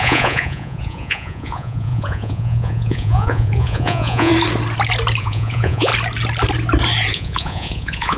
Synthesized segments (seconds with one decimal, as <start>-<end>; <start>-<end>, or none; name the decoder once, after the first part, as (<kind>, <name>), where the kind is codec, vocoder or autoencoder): 0.0-4.3 (vocoder, Vocos); 5.2-5.9; 7.1-8.2